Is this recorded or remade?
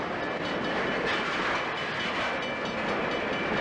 recorded